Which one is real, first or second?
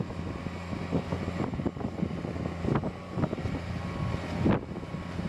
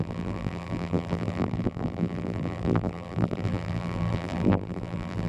first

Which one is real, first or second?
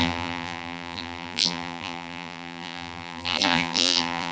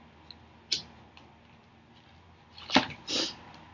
second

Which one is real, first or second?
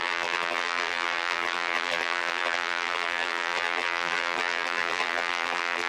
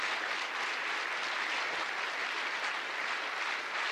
second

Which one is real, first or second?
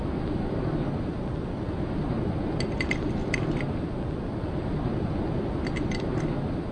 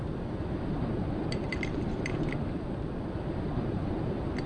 first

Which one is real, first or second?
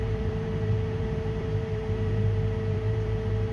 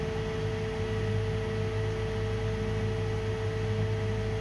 second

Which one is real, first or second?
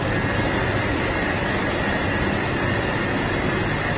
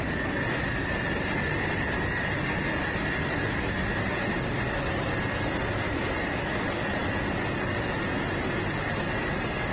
first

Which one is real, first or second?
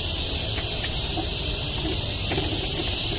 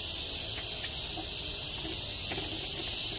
second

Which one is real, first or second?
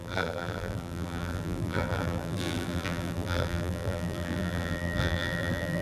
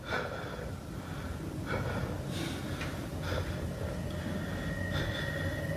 second